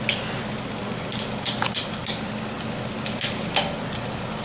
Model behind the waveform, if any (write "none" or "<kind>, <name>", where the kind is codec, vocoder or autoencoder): none